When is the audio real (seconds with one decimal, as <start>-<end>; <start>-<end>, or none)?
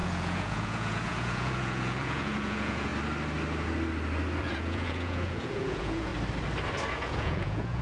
2.9-4.4; 6.1-6.9